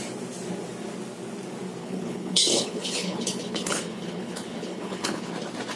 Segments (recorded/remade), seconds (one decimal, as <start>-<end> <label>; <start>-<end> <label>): 0.0-1.8 recorded; 1.8-5.3 remade; 5.3-5.8 recorded